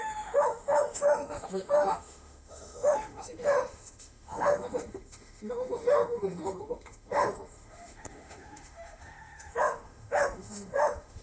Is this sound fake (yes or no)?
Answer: yes